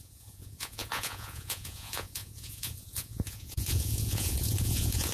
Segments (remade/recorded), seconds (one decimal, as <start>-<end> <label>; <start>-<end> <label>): 0.0-5.1 remade